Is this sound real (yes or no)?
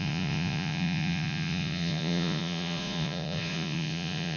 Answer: no